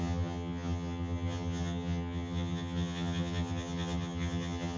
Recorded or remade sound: remade